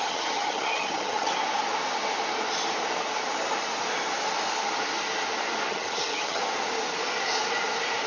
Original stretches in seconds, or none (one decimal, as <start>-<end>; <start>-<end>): 1.3-5.7; 6.4-8.1